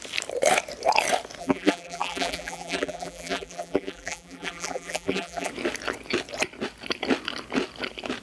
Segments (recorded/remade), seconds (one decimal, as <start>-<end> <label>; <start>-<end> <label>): 0.0-1.4 recorded; 1.4-5.5 remade; 5.5-8.2 recorded